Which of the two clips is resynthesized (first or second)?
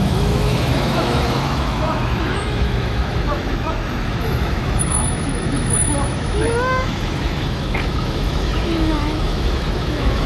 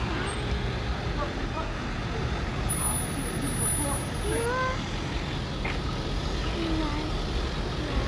first